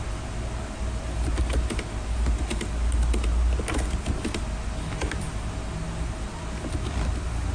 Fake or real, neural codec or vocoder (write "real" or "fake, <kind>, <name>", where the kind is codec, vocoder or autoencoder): real